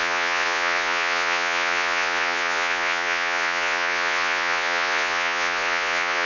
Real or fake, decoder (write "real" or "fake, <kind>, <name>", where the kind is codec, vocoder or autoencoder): fake, vocoder, Vocos